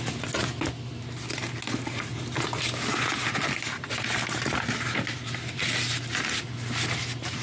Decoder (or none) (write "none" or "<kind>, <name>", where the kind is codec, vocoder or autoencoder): none